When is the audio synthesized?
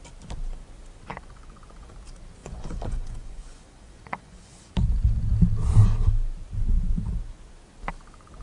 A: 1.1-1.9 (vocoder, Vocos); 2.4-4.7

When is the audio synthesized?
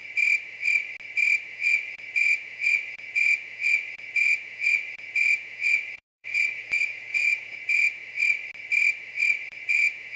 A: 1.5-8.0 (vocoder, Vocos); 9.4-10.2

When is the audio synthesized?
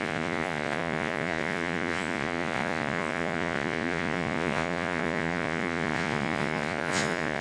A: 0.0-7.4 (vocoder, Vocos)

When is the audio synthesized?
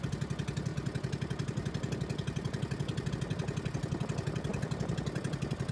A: none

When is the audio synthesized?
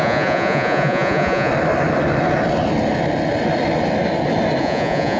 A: 0.0-1.5 (vocoder, Vocos); 4.6-5.2